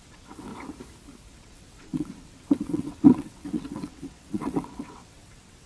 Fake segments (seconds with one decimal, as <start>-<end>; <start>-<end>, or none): 0.0-0.5; 1.3-5.7